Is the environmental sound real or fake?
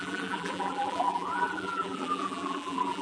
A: fake